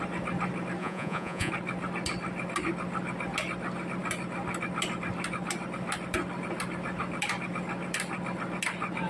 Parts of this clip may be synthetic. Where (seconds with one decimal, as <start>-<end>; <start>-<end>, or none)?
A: 0.8-1.5